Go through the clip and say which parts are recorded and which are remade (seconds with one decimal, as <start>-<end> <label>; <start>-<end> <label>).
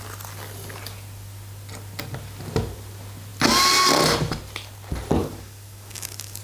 0.0-5.2 recorded; 5.2-6.4 remade